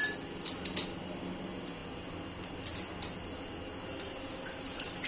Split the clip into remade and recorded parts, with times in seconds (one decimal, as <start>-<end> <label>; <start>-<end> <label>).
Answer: 0.0-5.1 recorded